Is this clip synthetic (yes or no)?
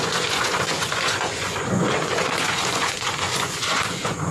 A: yes